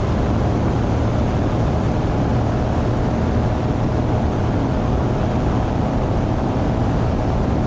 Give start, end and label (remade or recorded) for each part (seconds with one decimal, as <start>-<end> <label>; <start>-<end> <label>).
0.0-2.3 remade; 2.3-3.0 recorded; 3.0-7.7 remade